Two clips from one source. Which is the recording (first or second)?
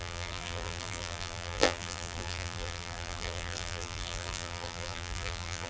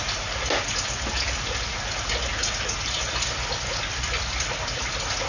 second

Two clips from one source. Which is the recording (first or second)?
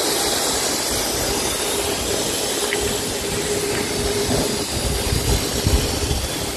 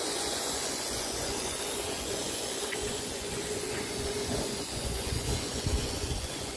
first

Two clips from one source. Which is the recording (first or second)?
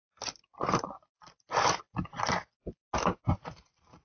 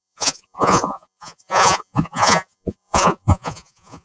first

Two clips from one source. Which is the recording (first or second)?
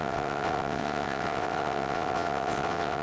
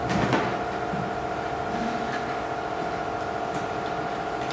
second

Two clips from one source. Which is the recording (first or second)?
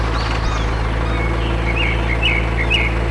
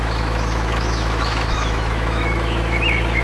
first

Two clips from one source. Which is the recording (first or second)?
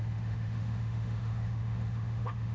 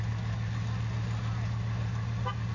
second